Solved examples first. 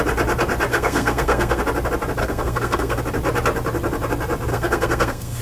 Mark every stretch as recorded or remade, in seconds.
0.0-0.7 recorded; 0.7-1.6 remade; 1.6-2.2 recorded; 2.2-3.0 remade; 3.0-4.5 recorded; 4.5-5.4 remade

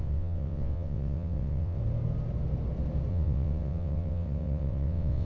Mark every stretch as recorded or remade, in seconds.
0.0-1.8 remade; 1.8-3.1 recorded; 3.1-5.3 remade

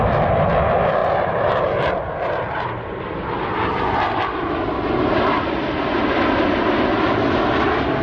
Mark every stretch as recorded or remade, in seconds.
0.0-1.0 recorded; 1.0-3.0 remade; 3.0-8.0 recorded

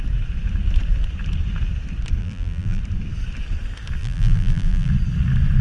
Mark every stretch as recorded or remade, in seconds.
0.0-2.2 recorded; 2.2-2.8 remade; 2.8-4.0 recorded; 4.0-4.9 remade; 4.9-5.6 recorded